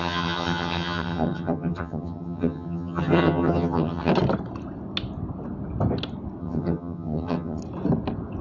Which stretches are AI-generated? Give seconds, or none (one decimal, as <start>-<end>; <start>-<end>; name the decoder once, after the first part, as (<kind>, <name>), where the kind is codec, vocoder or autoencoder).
0.0-4.1 (vocoder, HiFi-GAN); 6.4-7.6